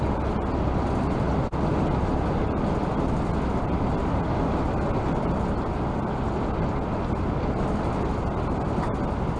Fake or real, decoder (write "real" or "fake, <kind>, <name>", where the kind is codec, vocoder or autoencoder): real